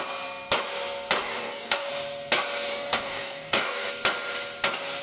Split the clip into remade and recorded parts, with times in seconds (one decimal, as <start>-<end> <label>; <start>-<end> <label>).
0.0-1.2 recorded; 1.2-1.9 remade; 1.9-2.7 recorded; 2.7-3.9 remade; 3.9-5.0 recorded